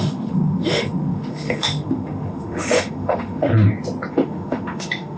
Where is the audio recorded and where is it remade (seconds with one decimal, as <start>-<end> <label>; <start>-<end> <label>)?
0.0-3.5 remade; 3.5-4.1 recorded; 4.1-5.2 remade